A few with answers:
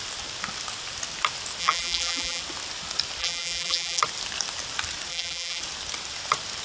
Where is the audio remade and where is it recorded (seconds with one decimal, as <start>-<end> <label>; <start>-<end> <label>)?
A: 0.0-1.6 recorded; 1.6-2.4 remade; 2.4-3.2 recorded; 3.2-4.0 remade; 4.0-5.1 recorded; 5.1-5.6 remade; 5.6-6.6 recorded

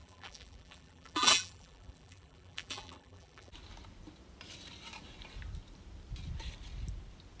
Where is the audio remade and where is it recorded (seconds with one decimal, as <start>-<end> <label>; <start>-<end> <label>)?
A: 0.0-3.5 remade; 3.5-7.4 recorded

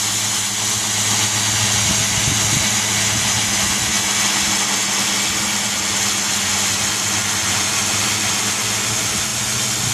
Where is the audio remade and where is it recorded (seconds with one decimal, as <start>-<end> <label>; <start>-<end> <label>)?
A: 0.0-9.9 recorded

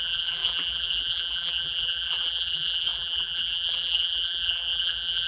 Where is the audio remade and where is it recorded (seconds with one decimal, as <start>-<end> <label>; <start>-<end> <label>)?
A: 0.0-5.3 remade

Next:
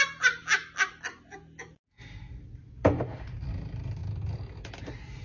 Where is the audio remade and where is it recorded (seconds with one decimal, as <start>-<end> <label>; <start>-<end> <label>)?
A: 0.0-5.2 recorded

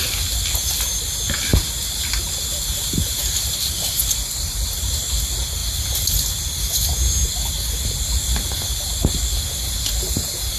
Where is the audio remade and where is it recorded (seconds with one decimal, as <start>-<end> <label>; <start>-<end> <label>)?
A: 0.0-10.6 recorded